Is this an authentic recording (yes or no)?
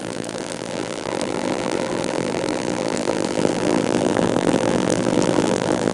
no